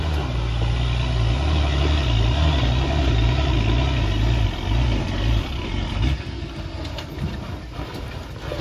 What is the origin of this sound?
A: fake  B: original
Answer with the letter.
B